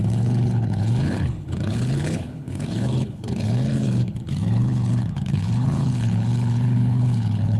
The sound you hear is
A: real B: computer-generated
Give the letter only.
B